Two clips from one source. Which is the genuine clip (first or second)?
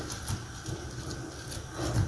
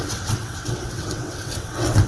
first